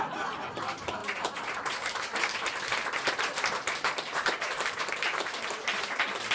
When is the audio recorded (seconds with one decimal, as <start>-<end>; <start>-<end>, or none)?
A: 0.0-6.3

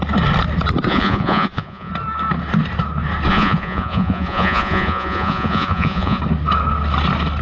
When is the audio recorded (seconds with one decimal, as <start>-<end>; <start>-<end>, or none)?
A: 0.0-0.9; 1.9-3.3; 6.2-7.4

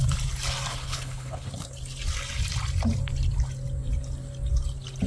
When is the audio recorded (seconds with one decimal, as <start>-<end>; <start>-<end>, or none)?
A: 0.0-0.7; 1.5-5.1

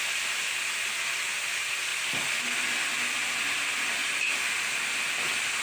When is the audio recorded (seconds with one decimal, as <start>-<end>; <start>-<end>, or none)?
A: 0.0-5.6

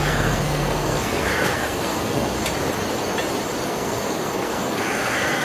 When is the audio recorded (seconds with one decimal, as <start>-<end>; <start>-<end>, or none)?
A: 2.4-3.7

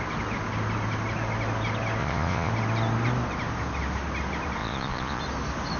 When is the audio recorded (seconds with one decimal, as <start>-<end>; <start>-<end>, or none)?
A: 0.0-2.0; 2.5-4.6; 5.2-5.8

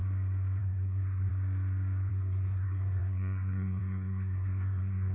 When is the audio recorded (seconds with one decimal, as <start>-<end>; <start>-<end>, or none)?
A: 0.0-0.6; 1.3-2.1

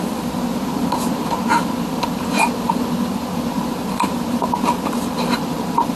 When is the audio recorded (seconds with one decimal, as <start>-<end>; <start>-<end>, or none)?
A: 0.0-6.0